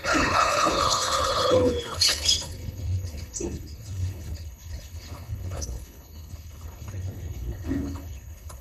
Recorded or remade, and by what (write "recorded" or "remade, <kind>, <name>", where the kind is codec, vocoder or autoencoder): remade, codec, HILCodec